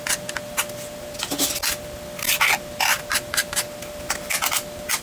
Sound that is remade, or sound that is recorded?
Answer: recorded